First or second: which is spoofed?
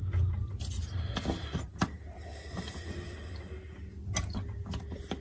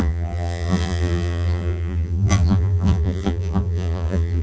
second